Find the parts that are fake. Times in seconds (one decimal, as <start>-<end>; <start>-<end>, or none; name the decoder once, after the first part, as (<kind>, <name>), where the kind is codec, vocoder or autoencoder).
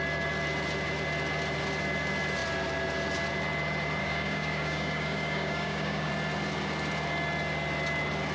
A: 4.0-6.1 (codec, DAC)